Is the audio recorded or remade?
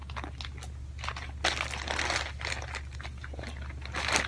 recorded